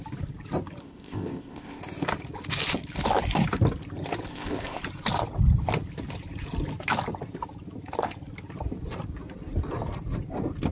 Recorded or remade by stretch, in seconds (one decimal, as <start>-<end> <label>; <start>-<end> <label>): 0.0-0.8 recorded; 0.8-1.8 remade; 1.8-4.3 recorded; 4.3-4.8 remade; 4.8-10.7 recorded